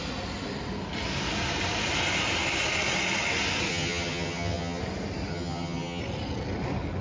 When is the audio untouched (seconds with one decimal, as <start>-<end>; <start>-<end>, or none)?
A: 0.0-3.7; 4.8-5.3; 6.0-7.0